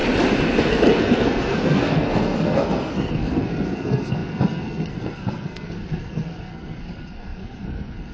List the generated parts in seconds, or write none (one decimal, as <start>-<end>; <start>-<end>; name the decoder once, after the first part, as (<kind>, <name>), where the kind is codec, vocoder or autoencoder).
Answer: 0.6-8.1 (codec, SNAC)